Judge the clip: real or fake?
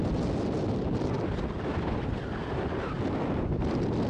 fake